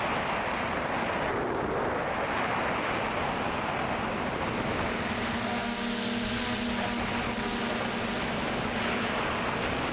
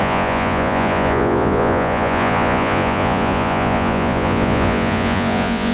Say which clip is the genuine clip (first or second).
first